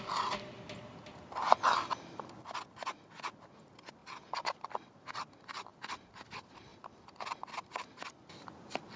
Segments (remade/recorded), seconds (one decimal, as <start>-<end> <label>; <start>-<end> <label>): 0.0-9.0 recorded